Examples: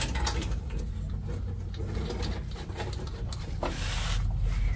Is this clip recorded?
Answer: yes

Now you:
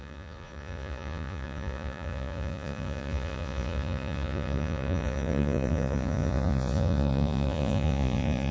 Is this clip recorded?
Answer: no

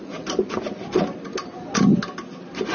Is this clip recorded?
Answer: yes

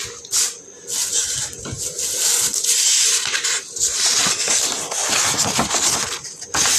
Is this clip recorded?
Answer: yes